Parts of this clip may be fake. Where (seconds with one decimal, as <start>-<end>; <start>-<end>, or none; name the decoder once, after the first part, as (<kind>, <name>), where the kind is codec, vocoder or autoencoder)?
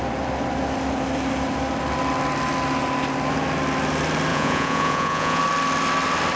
4.3-5.4 (vocoder, Vocos)